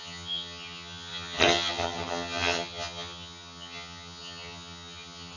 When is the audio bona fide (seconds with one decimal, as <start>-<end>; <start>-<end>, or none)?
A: none